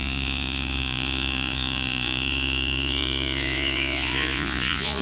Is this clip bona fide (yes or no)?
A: no